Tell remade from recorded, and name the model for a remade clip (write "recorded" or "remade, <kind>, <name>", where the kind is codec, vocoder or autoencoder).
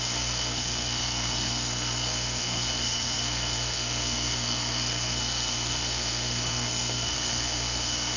remade, codec, SNAC